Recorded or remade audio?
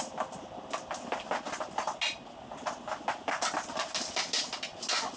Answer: recorded